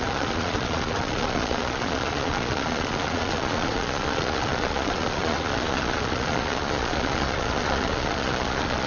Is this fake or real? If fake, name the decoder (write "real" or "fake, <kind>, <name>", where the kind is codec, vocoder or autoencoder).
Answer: fake, vocoder, Vocos